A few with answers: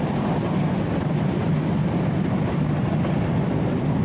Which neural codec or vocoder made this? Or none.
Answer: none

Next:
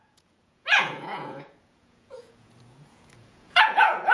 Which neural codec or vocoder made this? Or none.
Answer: vocoder, Vocos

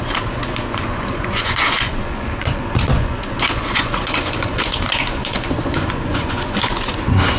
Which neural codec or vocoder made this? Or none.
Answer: vocoder, Vocos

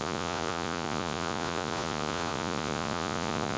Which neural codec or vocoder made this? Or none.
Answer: vocoder, Vocos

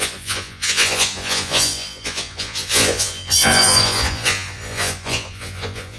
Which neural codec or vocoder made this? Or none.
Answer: vocoder, Vocos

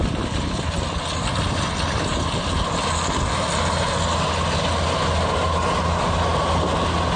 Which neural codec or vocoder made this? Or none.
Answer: none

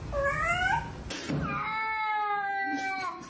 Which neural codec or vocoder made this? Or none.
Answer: none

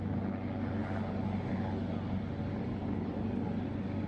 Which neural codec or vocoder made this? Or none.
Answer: none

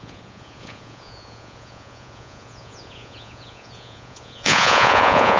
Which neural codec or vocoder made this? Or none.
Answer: vocoder, Vocos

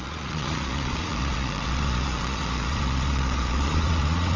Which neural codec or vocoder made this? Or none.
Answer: vocoder, Vocos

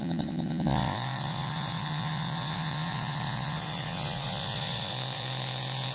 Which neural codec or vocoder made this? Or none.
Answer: vocoder, Vocos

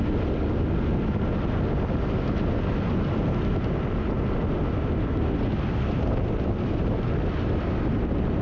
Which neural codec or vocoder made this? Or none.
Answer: none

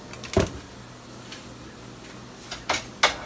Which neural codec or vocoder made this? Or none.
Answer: none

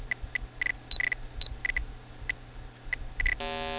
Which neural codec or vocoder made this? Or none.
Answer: none